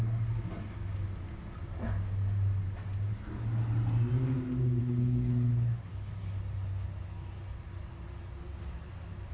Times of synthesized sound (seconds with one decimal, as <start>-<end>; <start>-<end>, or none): 4.8-6.1